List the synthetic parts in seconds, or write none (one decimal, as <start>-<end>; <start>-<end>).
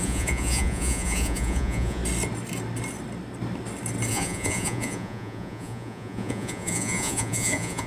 0.0-2.0; 4.1-7.9